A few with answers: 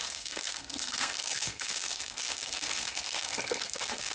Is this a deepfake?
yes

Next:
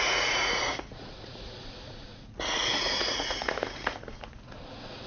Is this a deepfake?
yes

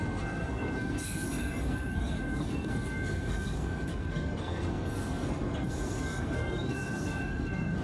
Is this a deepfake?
yes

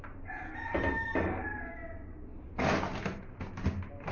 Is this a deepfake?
no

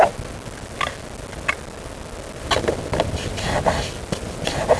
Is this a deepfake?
no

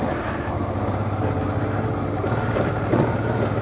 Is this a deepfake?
no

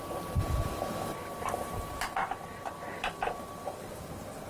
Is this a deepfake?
no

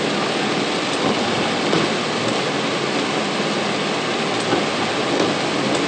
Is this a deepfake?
no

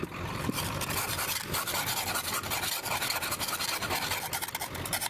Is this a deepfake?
no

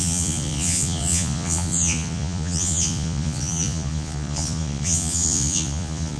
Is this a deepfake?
yes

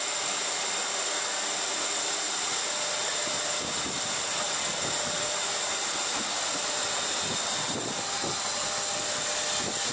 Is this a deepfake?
no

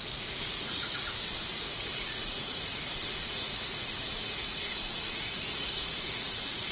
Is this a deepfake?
yes